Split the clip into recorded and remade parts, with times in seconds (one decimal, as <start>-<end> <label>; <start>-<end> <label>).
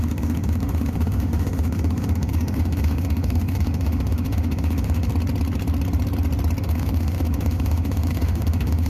0.0-5.1 remade; 5.1-6.6 recorded; 6.6-8.9 remade